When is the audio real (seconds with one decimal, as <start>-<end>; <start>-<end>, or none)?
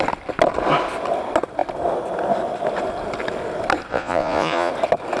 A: 0.0-3.9; 4.7-5.2